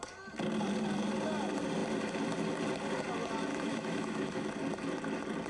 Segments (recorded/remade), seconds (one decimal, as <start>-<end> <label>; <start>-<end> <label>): 0.0-3.5 recorded; 3.5-4.5 remade; 4.5-5.5 recorded